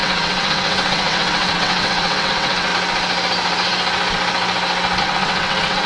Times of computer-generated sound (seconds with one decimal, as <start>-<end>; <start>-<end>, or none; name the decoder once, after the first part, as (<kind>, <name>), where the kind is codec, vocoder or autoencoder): 0.0-2.7 (vocoder, WaveNeXt); 5.0-5.9